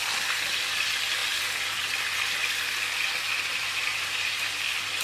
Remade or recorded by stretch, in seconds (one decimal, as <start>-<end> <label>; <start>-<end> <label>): 0.0-3.5 recorded; 3.5-4.6 remade; 4.6-5.0 recorded